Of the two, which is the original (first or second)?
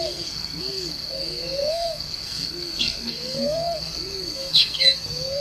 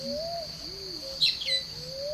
second